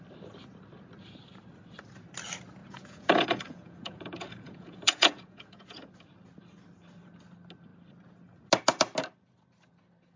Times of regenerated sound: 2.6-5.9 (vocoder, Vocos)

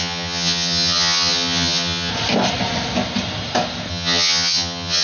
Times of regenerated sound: 0.0-2.1 (vocoder, HiFi-GAN); 3.9-5.0

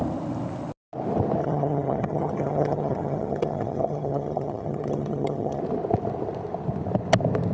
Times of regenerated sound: 1.4-5.6 (vocoder, HiFi-GAN)

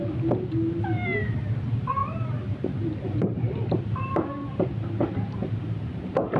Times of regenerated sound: 2.0-3.4 (vocoder, BigVGAN v2)

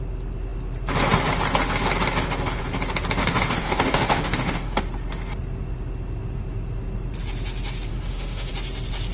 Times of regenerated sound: 3.2-4.8 (autoencoder, DAC-VAE); 7.9-8.5

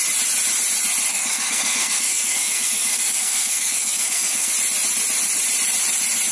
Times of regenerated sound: 1.1-4.5 (codec, SNAC)

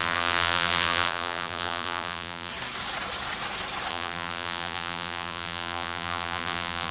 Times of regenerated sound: 0.0-2.5 (vocoder, BigVGAN v2); 3.9-6.9